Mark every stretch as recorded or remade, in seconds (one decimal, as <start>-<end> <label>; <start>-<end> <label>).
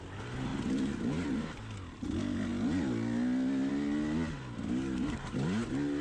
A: 0.0-6.0 recorded